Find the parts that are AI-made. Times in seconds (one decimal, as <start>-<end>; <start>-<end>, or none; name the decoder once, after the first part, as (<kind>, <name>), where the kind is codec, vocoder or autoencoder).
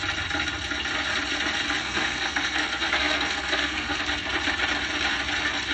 1.8-4.0 (codec, SNAC)